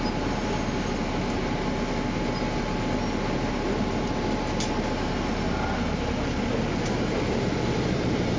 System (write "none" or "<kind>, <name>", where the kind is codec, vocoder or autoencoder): none